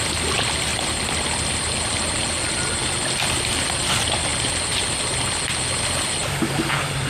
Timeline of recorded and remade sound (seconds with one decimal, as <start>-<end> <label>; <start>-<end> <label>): 0.0-7.1 recorded